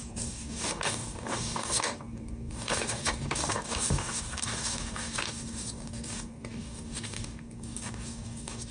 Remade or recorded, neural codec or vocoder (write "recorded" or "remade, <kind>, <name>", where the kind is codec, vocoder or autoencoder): remade, codec, DAC